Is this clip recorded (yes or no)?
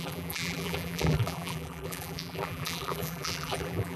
no